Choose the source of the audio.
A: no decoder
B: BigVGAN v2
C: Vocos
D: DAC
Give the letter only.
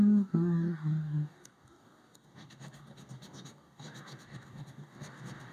D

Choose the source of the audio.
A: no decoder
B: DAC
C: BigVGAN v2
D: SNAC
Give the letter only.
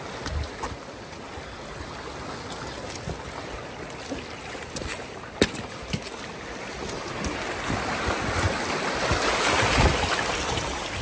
A